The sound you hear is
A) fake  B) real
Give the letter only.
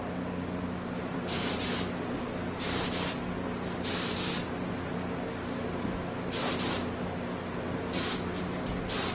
B